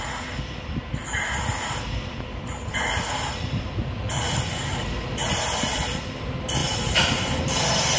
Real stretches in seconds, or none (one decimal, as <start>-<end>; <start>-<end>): 0.0-8.0